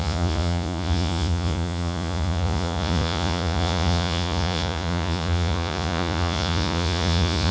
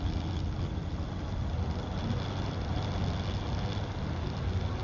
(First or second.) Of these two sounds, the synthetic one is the first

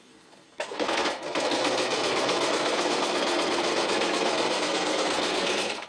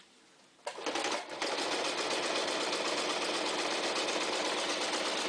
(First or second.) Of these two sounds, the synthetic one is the first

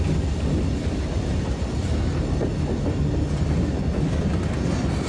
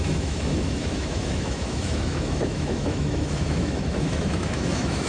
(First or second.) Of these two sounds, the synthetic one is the second